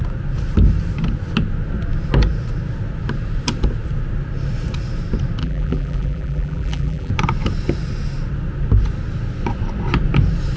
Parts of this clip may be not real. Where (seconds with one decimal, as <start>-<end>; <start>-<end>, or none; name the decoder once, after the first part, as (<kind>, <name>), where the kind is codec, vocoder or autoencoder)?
5.4-7.1 (vocoder, BigVGAN v2)